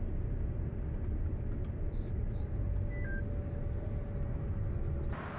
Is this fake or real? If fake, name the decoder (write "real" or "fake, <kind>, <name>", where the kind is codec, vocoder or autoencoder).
real